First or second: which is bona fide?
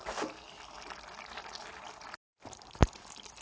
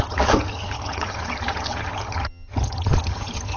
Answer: first